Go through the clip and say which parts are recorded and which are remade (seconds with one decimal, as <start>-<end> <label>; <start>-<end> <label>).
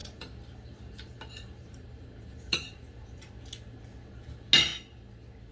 0.0-3.3 remade; 3.3-5.5 recorded